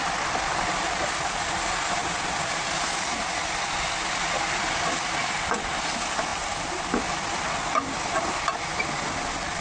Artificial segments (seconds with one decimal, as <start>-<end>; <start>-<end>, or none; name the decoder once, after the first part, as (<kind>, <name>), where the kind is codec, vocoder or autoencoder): none